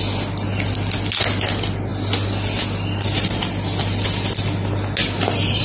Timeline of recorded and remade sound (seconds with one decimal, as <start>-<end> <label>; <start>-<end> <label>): 0.0-5.6 recorded